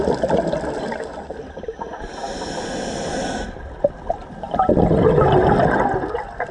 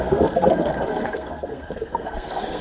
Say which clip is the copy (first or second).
second